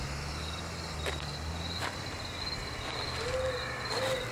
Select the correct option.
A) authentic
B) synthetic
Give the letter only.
A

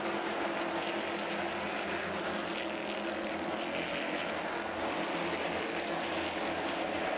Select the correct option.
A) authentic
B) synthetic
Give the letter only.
A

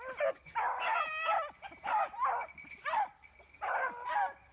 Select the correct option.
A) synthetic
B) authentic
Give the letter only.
B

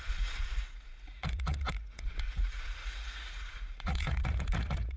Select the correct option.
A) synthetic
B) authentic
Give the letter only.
A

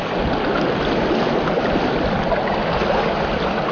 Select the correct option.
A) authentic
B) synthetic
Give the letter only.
A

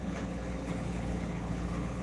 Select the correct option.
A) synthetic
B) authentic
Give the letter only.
A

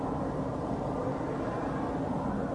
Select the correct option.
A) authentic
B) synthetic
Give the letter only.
A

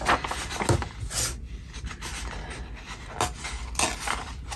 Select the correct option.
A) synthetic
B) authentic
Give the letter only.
B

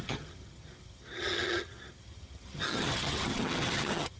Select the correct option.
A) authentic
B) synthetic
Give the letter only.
B